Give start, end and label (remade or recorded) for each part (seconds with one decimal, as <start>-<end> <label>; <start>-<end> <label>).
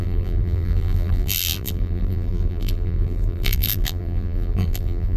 0.0-5.2 remade